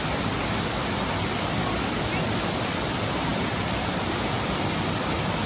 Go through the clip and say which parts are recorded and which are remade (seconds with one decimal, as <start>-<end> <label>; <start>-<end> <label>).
0.0-5.5 recorded